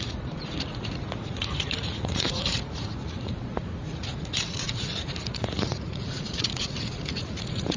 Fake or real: fake